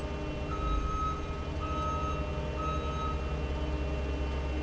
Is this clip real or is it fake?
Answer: real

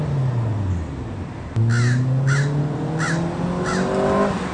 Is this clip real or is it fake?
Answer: real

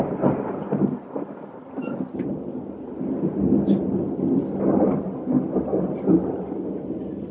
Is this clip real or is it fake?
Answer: real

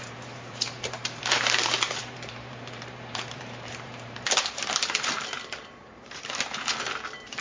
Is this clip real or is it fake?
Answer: fake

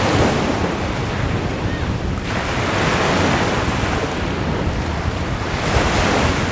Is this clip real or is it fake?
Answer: real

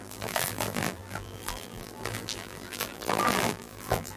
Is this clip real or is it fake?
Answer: fake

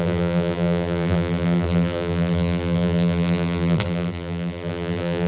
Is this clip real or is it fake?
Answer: fake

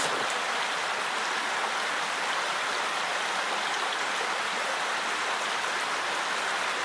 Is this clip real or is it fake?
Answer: fake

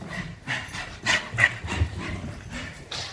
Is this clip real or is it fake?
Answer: real